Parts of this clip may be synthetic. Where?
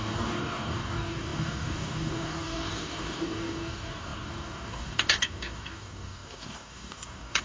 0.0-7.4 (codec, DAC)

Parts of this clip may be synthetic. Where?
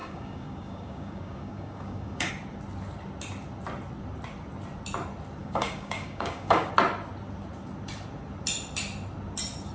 0.0-2.3 (codec, DAC); 5.4-6.7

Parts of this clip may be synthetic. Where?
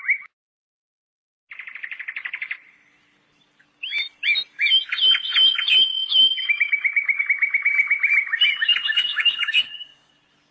6.0-7.2 (codec, DAC); 8.9-10.1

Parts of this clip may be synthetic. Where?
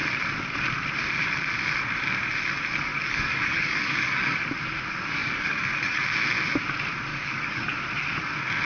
2.9-4.5 (codec, DAC); 5.2-6.0; 7.1-7.8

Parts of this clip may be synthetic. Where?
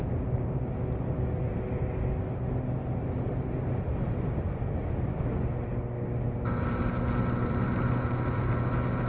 none